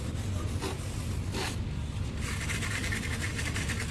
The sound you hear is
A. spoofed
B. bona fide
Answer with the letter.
B